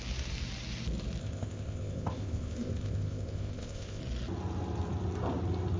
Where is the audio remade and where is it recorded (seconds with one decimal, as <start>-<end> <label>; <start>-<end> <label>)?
0.0-1.2 recorded; 1.2-4.0 remade; 4.0-5.8 recorded